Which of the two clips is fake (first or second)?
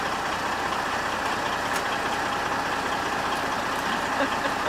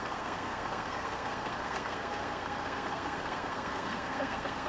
second